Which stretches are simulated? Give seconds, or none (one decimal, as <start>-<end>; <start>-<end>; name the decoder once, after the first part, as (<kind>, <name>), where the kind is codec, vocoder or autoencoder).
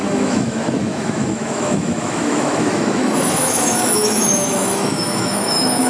0.0-5.9 (autoencoder, DAC-VAE)